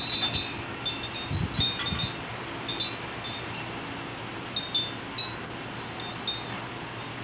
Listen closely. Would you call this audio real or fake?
real